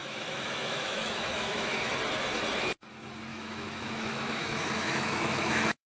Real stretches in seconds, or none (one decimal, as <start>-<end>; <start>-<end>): 1.9-3.3